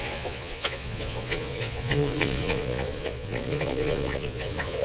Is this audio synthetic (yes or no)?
yes